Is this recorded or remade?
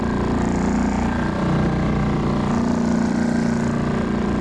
recorded